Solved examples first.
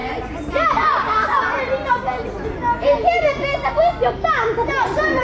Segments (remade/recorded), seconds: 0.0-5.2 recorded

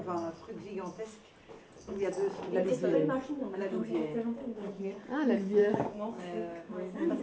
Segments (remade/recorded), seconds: 0.0-3.4 recorded; 3.4-4.7 remade; 4.7-5.6 recorded; 5.6-7.2 remade

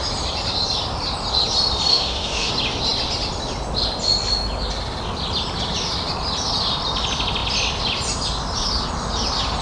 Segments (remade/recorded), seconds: 0.0-1.9 recorded; 1.9-2.5 remade; 2.5-9.6 recorded

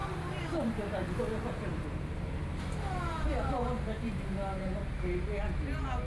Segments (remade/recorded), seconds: 0.0-1.2 remade; 1.2-1.7 recorded; 1.7-5.3 remade; 5.3-6.1 recorded

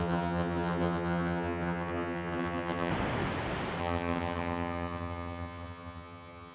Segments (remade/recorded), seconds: 0.0-2.9 remade; 2.9-3.8 recorded; 3.8-6.5 remade

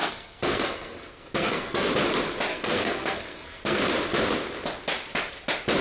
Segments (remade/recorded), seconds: 0.0-1.9 remade; 1.9-2.5 recorded; 2.5-3.8 remade; 3.8-5.8 recorded

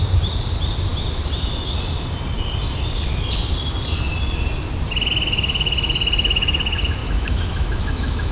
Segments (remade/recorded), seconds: 0.0-7.0 recorded; 7.0-8.3 remade

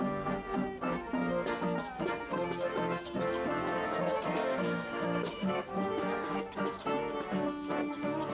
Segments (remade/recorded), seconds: 0.0-4.4 recorded; 4.4-6.4 remade; 6.4-7.8 recorded; 7.8-8.3 remade